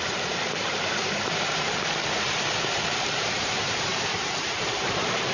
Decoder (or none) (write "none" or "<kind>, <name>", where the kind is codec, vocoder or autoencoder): vocoder, BigVGAN v2